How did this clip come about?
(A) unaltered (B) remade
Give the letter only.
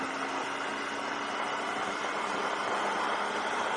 A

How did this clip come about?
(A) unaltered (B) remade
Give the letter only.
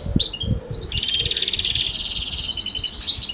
A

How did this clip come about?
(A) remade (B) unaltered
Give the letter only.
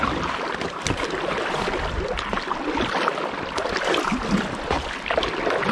B